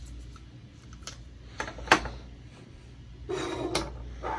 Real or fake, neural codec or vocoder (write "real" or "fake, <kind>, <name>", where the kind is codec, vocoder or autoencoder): real